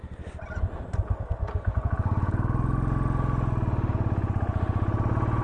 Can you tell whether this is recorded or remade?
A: recorded